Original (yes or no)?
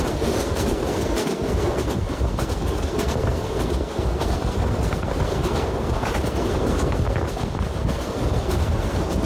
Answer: no